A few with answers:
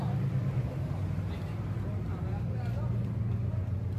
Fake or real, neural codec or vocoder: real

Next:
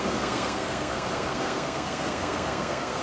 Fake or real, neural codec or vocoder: fake, codec, SNAC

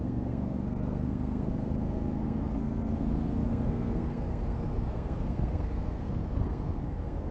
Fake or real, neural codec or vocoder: fake, codec, SNAC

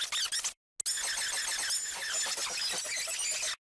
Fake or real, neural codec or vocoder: real